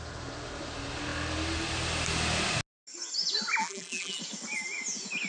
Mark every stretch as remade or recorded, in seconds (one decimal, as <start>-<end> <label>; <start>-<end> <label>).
0.0-3.6 recorded; 3.6-4.2 remade; 4.2-5.3 recorded